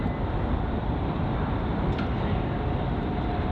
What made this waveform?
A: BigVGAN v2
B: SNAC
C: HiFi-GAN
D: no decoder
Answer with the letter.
A